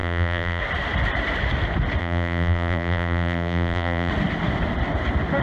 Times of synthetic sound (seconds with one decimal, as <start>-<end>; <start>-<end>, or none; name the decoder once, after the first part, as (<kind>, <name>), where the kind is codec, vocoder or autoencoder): 0.0-0.6 (vocoder, BigVGAN v2); 2.0-4.1